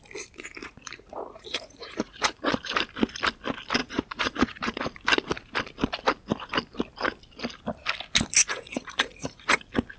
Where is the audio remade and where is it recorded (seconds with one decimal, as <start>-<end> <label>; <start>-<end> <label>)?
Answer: 0.0-0.6 recorded; 0.6-2.5 remade; 2.5-3.8 recorded; 3.8-4.8 remade; 4.8-8.5 recorded; 8.5-9.6 remade; 9.6-10.0 recorded